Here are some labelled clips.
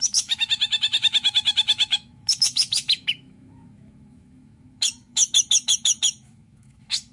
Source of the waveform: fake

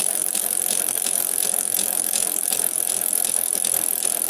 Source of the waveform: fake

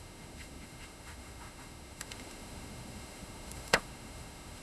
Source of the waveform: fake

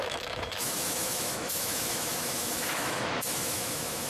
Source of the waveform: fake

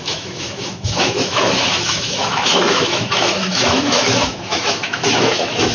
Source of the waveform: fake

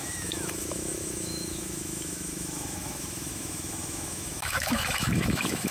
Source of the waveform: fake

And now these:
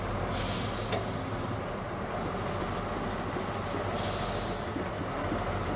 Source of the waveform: real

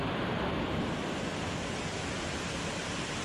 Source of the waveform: real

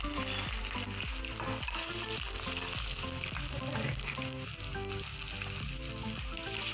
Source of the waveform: real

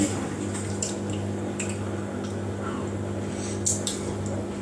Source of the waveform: real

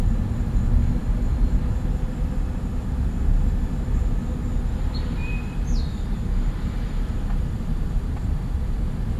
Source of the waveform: real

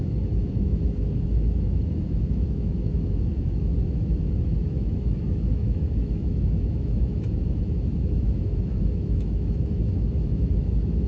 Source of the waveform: fake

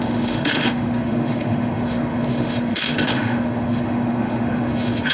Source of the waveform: fake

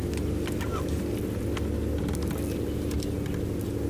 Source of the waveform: real